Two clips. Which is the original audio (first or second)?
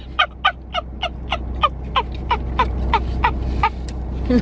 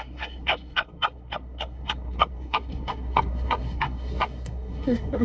first